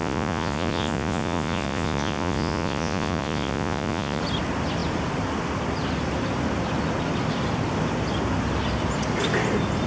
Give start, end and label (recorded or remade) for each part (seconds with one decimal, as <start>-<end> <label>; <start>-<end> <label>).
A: 0.0-4.2 remade; 4.2-9.9 recorded